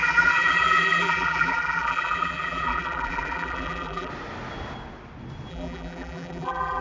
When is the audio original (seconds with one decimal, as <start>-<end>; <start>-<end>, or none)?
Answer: 4.1-5.5